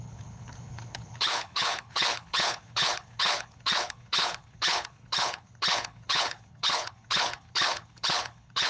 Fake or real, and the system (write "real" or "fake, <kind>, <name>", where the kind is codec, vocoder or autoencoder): fake, codec, HILCodec